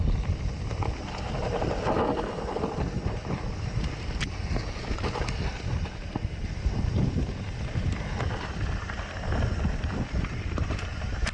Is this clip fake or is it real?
real